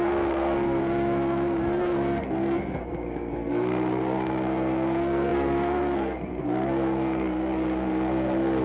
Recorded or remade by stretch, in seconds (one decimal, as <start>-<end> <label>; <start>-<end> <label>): 0.0-8.6 remade